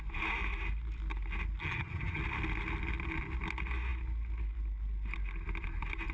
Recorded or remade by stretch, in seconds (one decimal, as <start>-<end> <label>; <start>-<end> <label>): 0.0-1.6 recorded; 1.6-2.2 remade; 2.2-6.1 recorded